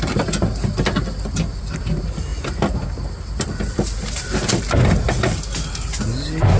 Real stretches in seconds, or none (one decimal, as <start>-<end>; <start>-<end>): 0.0-6.6